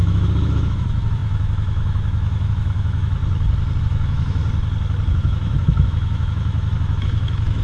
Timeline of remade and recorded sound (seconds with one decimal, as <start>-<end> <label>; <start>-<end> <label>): 0.0-3.2 remade; 3.2-3.8 recorded; 3.8-4.4 remade; 4.4-5.1 recorded; 5.1-7.6 remade